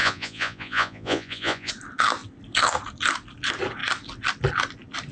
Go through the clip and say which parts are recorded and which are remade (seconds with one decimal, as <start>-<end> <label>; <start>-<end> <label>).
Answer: 0.0-1.7 remade; 1.7-5.1 recorded